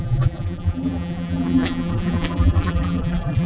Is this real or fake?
fake